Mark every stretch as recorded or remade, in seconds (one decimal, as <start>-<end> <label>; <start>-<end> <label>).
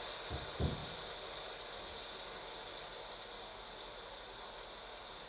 0.0-5.3 recorded